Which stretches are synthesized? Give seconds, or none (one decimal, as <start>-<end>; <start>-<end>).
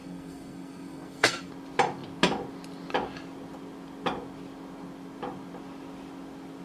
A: 0.0-1.5